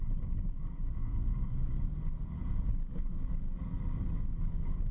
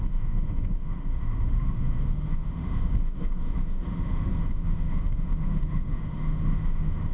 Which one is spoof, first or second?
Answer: second